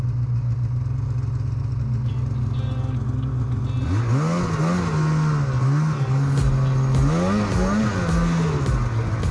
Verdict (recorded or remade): recorded